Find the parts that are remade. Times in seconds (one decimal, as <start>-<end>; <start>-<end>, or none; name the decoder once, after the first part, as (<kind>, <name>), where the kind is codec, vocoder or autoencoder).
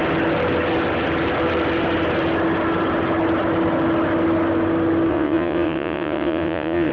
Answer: 5.1-6.9 (vocoder, WaveNeXt)